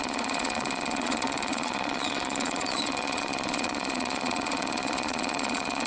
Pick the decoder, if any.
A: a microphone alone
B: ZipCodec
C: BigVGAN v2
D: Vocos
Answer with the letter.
D